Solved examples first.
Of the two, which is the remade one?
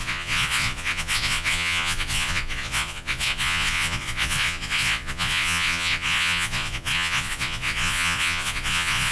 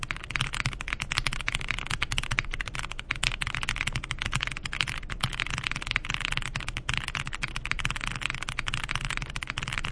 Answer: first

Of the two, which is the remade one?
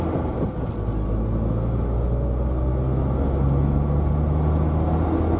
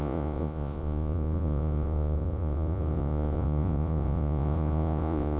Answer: second